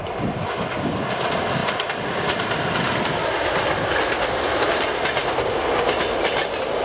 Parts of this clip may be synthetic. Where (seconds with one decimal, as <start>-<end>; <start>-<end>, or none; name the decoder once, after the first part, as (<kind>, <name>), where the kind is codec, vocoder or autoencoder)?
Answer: none